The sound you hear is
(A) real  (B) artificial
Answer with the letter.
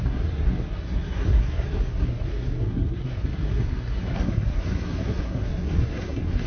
B